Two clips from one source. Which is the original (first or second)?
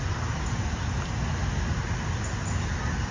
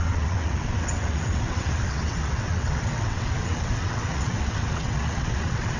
first